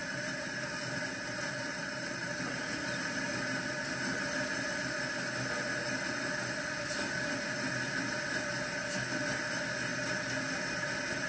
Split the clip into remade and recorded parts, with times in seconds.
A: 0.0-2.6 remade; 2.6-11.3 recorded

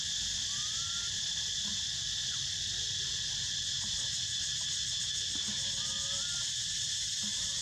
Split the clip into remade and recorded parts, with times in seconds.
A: 0.0-7.6 recorded

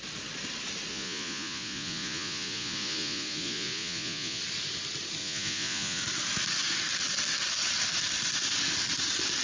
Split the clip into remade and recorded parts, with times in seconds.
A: 0.0-0.9 recorded; 0.9-4.4 remade; 4.4-5.2 recorded; 5.2-6.0 remade; 6.0-9.4 recorded

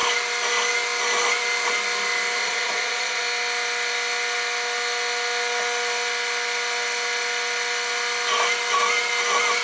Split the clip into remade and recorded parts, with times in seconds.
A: 0.0-2.4 recorded; 2.4-3.2 remade; 3.2-9.6 recorded

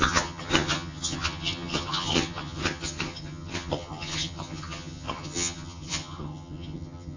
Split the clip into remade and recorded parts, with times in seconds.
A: 0.0-7.2 remade